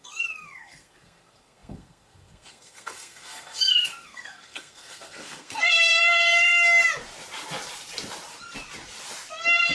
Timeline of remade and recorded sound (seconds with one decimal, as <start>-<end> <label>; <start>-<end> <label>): 0.0-6.5 remade; 6.5-9.7 recorded